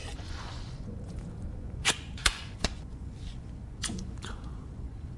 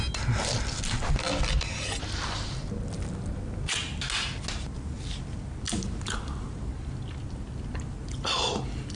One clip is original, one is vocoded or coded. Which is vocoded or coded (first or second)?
first